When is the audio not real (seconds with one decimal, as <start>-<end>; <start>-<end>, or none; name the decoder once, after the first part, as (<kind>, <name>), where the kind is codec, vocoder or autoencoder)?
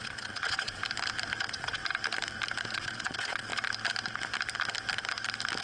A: 0.0-0.8 (vocoder, Vocos); 1.4-1.8; 2.7-3.5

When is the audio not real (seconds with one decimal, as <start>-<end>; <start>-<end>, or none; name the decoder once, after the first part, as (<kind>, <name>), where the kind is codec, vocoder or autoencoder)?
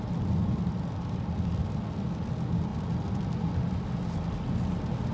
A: none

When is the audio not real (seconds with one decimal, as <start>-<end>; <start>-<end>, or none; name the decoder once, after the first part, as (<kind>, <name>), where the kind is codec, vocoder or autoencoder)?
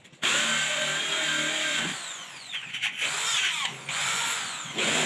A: 1.7-5.1 (vocoder, Vocos)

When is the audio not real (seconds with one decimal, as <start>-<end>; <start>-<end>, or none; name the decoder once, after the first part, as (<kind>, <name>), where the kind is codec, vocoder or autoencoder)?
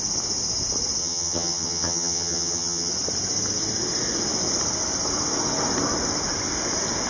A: 1.0-2.9 (vocoder, HiFi-GAN)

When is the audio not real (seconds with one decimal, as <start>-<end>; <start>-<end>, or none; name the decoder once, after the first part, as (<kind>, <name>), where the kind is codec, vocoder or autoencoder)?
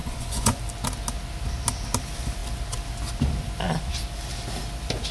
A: 0.0-0.6 (vocoder, Vocos)